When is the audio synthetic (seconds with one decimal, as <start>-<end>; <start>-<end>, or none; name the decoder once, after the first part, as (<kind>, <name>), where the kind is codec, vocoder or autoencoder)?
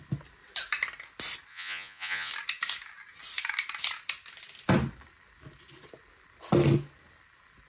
1.5-2.3 (vocoder, Vocos)